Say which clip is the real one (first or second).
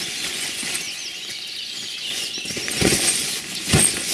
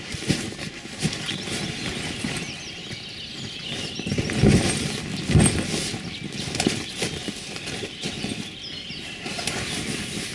second